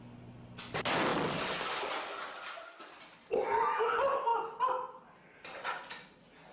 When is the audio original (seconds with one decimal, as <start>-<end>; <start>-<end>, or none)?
0.0-6.5